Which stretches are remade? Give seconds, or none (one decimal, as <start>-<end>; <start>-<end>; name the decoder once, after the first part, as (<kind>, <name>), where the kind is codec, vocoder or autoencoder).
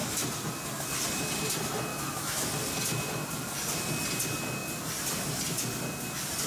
1.9-2.5 (autoencoder, DAC-VAE)